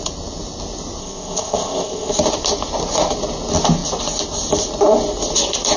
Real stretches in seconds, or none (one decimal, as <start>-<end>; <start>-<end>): 0.0-1.0; 2.1-5.8